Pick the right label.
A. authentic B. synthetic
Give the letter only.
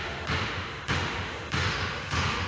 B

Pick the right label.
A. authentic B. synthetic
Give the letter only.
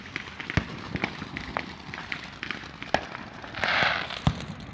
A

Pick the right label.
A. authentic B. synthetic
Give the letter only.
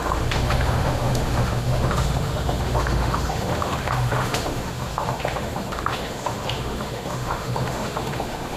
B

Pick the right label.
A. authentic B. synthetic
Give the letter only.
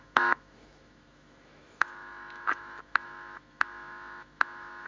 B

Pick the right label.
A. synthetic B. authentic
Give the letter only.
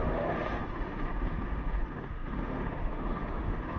A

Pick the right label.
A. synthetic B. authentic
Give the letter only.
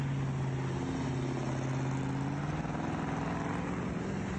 B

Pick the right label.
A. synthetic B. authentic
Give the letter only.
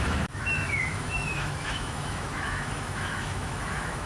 A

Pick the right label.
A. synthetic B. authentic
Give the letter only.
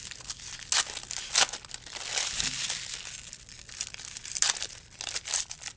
B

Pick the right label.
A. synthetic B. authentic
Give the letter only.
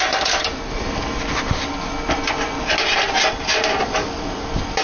B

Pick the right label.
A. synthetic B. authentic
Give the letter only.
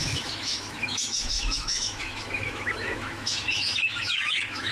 A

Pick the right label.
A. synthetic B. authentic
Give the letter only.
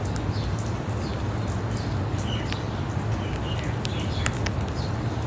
B